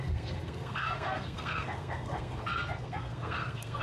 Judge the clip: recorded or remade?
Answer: remade